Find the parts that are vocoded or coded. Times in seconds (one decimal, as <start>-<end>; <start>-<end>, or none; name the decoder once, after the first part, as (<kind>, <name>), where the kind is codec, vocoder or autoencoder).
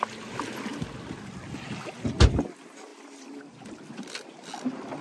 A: none